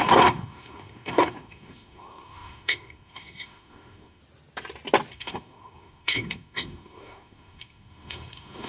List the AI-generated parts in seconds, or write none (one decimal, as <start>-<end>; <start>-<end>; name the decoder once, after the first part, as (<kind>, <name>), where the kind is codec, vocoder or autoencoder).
0.0-4.2 (codec, SNAC); 5.1-8.7